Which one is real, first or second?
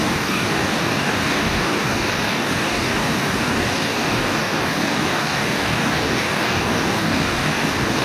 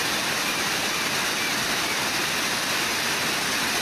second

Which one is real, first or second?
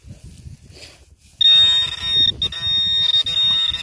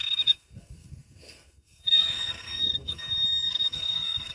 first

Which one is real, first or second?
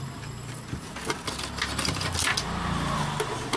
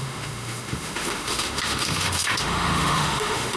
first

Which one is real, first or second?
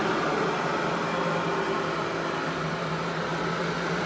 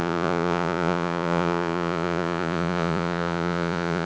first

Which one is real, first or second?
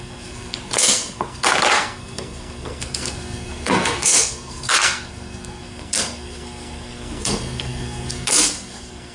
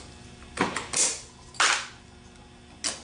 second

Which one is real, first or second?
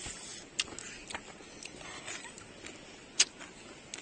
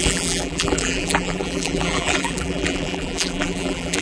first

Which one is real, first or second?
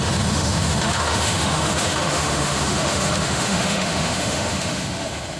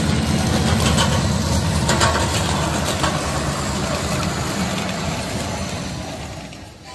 second